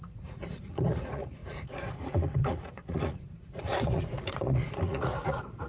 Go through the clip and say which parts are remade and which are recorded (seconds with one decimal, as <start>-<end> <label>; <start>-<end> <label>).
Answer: 0.0-5.7 remade